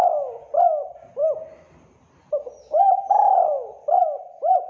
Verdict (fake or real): real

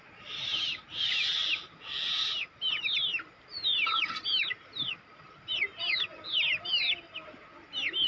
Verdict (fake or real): fake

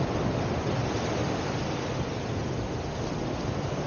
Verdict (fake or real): real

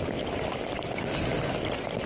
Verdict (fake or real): real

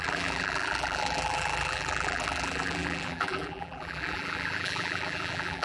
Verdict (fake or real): fake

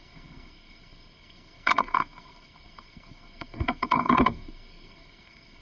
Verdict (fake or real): fake